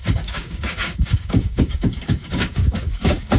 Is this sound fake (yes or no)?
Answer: yes